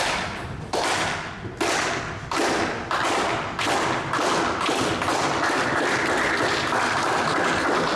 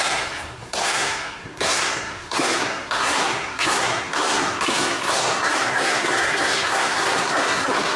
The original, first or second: first